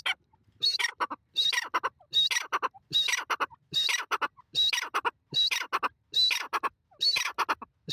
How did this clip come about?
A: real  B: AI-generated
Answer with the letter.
A